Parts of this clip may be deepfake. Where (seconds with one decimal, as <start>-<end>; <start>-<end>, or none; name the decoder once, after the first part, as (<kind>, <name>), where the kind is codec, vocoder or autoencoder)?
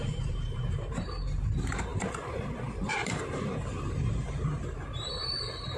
0.0-5.8 (vocoder, BigVGAN v2)